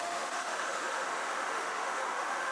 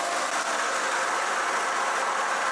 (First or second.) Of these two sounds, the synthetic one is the first